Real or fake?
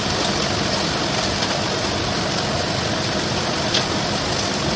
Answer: real